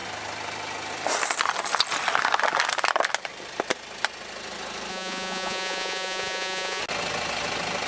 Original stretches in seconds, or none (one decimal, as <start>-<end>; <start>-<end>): 0.0-4.9; 6.8-7.9